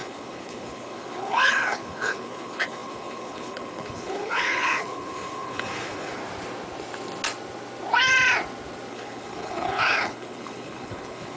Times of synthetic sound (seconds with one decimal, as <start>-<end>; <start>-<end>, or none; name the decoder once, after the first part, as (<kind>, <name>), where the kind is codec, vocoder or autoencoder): 0.0-6.2 (codec, HILCodec); 8.9-11.4